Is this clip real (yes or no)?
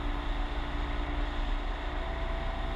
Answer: yes